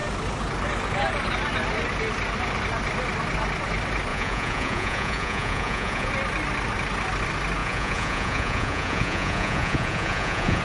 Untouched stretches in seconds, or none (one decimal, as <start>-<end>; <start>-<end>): 0.0-4.1; 6.1-7.6